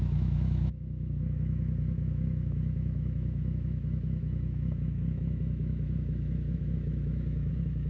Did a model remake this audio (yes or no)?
yes